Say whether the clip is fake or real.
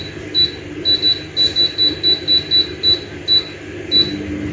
real